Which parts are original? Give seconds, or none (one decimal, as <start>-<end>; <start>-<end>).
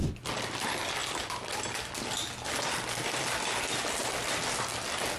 0.0-5.2